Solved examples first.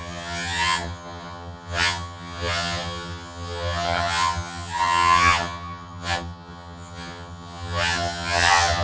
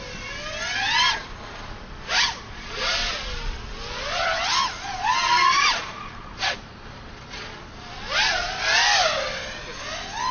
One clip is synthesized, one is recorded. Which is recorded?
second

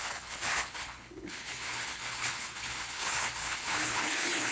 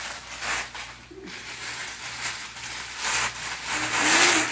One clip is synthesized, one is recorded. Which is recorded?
second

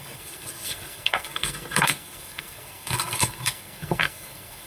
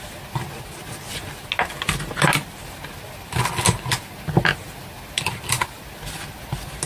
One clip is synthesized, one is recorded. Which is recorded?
second